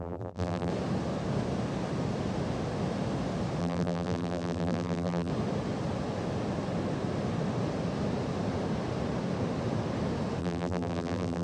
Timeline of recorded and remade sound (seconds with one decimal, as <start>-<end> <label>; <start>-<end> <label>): 0.0-0.7 remade; 0.7-3.6 recorded; 3.6-5.3 remade; 5.3-10.4 recorded; 10.4-11.4 remade

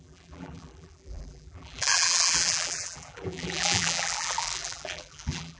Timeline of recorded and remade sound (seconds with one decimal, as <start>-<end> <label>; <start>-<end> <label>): 0.0-5.6 remade

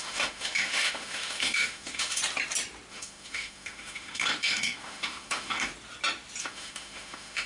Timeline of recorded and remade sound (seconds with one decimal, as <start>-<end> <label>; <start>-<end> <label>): 0.0-2.2 remade; 2.2-2.9 recorded; 2.9-5.7 remade; 5.7-6.4 recorded; 6.4-7.5 remade

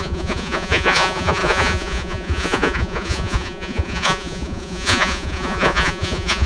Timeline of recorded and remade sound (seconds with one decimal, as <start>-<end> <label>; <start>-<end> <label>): 0.0-6.5 remade

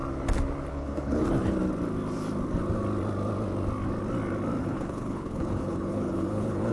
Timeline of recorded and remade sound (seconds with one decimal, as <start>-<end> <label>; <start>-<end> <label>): 0.0-0.7 recorded; 0.7-1.2 remade; 1.2-4.6 recorded; 4.6-6.7 remade

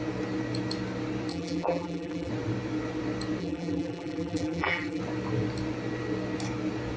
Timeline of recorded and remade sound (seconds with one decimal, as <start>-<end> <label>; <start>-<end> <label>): 0.0-1.3 recorded; 1.3-2.3 remade; 2.3-3.4 recorded; 3.4-5.0 remade; 5.0-7.0 recorded